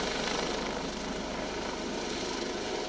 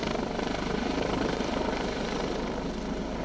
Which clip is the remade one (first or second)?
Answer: second